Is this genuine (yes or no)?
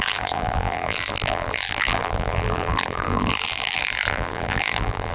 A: no